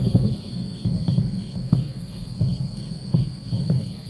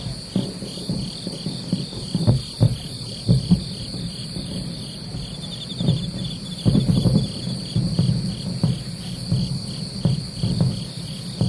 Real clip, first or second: second